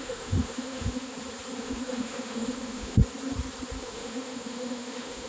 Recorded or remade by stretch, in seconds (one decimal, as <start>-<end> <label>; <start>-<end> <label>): 0.0-1.1 remade; 1.1-1.6 recorded; 1.6-3.0 remade; 3.0-3.8 recorded; 3.8-5.3 remade